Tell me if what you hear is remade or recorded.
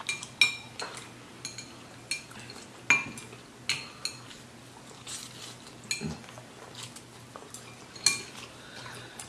recorded